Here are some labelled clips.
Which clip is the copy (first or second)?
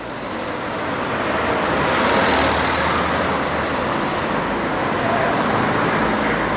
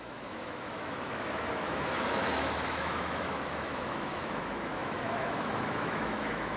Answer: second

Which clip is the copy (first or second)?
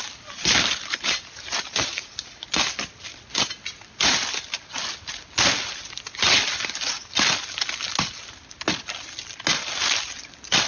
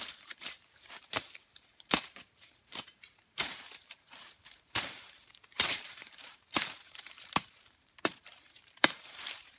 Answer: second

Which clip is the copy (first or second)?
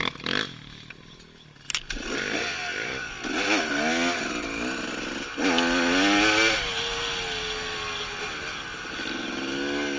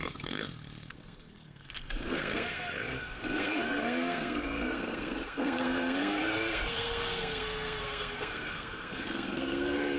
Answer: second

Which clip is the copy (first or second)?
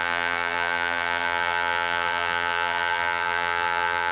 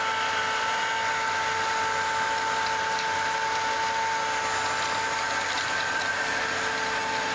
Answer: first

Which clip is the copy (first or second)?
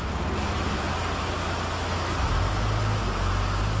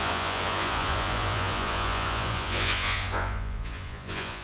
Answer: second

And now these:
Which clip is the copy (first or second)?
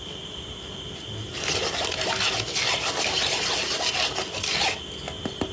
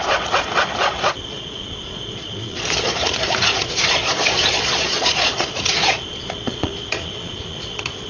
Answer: second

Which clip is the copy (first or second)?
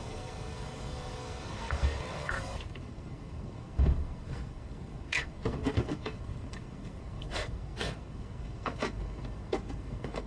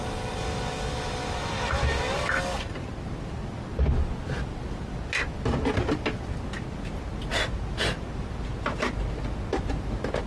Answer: first